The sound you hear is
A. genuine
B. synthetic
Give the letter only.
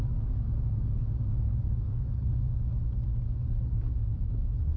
B